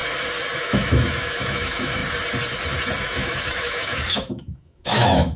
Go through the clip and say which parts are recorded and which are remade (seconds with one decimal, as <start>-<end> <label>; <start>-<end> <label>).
0.0-0.6 recorded; 0.6-2.0 remade; 2.0-3.0 recorded; 3.0-5.4 remade

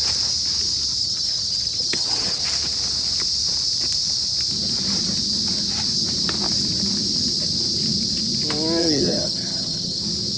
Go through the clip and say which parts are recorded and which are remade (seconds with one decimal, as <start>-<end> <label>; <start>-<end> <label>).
0.0-1.0 recorded; 1.0-2.4 remade; 2.4-8.8 recorded; 8.8-10.0 remade; 10.0-10.4 recorded